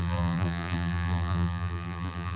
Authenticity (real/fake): fake